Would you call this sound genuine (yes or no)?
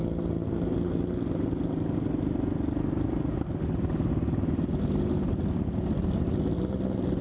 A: yes